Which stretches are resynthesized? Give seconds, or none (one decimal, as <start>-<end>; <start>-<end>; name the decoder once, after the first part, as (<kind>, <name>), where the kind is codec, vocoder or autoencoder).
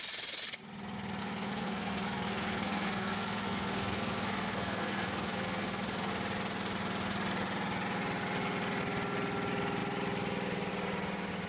1.2-6.1 (codec, SNAC)